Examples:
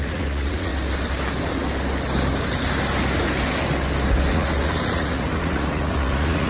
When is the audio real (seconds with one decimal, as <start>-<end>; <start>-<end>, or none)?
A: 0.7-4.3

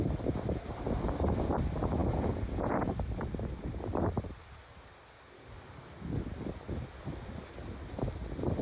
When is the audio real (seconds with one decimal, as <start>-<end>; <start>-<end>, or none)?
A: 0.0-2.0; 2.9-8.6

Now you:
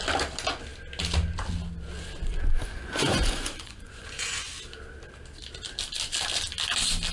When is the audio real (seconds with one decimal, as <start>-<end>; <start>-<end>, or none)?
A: 0.0-2.7; 4.5-7.1